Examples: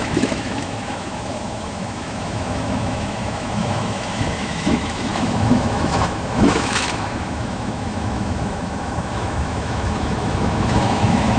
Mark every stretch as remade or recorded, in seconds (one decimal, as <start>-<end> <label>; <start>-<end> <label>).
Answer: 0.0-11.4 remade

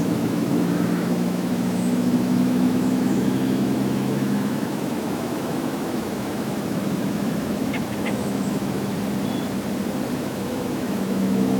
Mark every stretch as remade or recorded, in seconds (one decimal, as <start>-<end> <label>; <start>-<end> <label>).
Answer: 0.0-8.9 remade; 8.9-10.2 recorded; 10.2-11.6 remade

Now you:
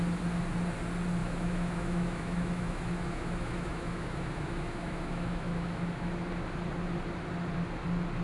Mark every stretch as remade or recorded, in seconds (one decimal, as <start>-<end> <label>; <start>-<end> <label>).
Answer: 0.0-1.2 recorded; 1.2-6.1 remade; 6.1-8.2 recorded

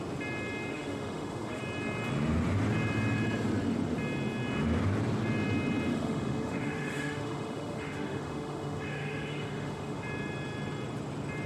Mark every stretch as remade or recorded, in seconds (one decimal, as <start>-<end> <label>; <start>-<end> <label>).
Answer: 0.0-0.7 recorded; 0.7-1.6 remade; 1.6-5.9 recorded; 5.9-10.0 remade; 10.0-11.5 recorded